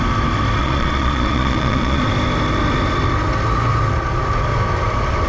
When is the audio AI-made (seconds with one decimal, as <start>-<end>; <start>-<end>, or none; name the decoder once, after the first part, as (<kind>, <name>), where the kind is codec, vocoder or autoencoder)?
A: 0.6-2.0 (vocoder, Vocos)